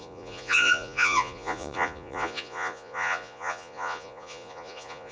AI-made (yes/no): yes